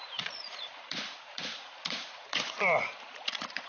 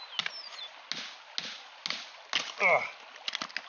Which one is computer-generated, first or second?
first